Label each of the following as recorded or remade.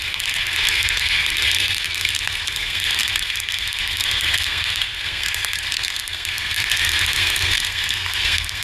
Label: remade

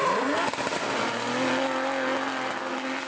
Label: recorded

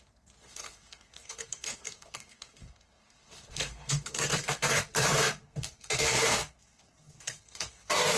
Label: remade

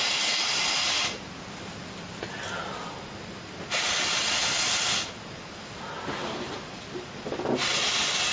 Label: recorded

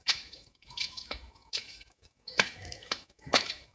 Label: remade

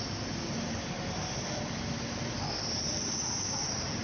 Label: recorded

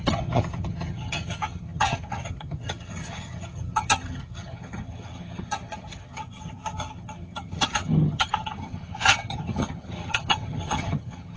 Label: remade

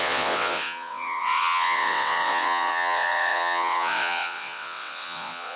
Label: remade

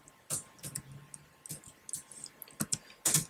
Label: recorded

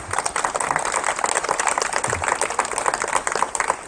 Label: recorded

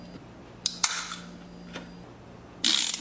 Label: recorded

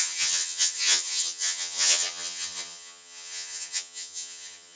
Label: remade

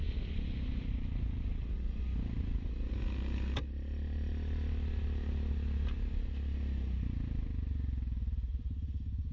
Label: recorded